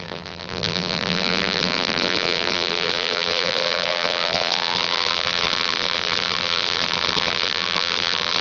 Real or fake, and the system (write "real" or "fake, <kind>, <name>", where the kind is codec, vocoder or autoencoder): fake, vocoder, BigVGAN v2